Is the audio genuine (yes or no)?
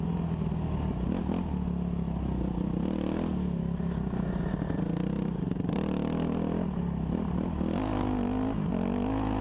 yes